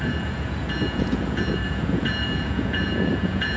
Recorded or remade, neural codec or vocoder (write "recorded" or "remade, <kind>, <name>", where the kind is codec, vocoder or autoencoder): remade, vocoder, Vocos